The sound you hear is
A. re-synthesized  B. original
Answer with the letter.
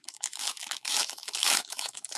A